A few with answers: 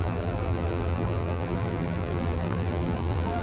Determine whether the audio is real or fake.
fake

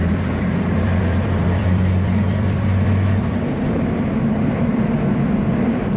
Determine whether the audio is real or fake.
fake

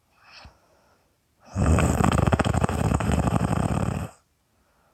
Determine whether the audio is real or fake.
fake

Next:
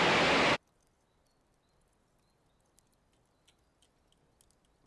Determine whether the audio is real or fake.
real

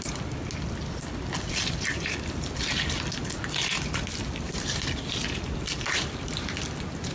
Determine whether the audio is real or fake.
real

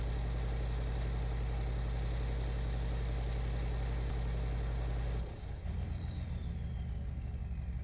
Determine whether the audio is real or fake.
real